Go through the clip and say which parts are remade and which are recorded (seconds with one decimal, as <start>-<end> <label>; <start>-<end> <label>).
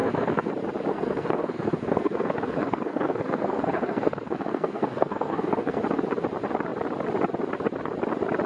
0.0-0.5 remade; 0.5-0.9 recorded; 0.9-5.8 remade; 5.8-8.5 recorded